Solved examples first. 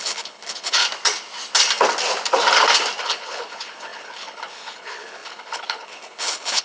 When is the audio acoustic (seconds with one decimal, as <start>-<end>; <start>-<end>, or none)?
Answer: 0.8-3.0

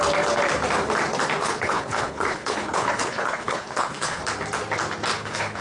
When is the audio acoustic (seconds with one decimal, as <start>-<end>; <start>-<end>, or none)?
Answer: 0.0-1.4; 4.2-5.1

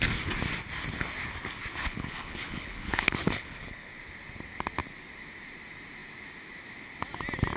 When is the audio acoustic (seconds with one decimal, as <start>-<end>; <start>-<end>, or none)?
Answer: 0.0-1.8; 3.9-7.6

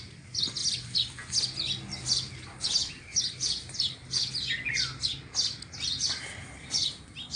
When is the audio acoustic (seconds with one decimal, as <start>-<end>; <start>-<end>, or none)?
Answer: 0.0-7.4

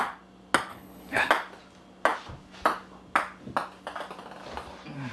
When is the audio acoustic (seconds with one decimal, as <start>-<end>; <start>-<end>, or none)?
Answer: 0.0-0.7; 1.3-5.1